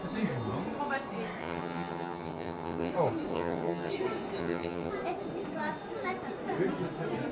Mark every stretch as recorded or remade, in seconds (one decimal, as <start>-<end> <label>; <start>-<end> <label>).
0.0-1.4 recorded; 1.4-2.9 remade; 2.9-3.3 recorded; 3.3-3.9 remade; 3.9-4.4 recorded; 4.4-4.9 remade; 4.9-7.3 recorded